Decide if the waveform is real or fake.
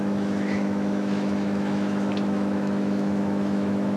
fake